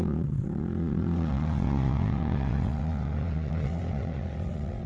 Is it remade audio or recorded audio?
remade